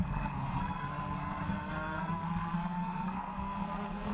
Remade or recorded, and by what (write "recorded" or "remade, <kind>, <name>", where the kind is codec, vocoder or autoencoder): remade, codec, SNAC